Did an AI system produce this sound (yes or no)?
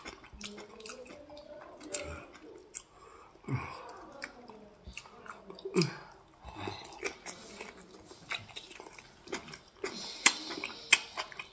no